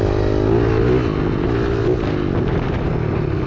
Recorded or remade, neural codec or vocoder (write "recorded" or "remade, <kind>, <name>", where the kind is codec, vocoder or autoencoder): recorded